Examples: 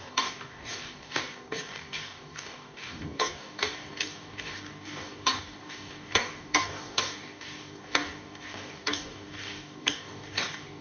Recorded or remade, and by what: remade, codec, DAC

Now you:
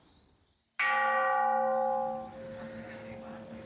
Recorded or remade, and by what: recorded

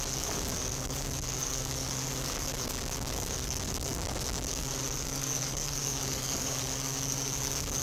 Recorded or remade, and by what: remade, codec, DAC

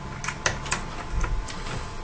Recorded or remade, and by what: recorded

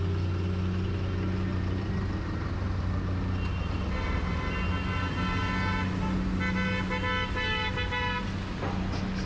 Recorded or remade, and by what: recorded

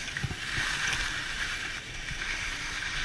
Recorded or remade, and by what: recorded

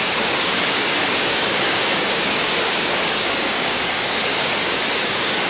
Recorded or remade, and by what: remade, codec, DAC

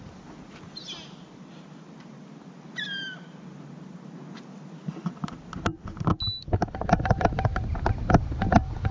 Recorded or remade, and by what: recorded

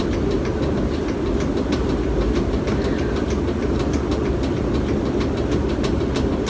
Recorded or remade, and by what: recorded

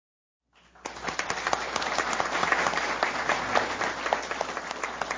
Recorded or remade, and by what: recorded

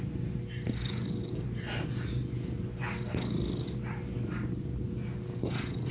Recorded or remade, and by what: recorded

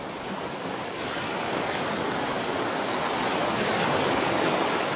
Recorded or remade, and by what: remade, codec, DAC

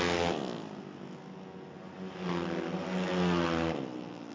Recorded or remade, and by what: recorded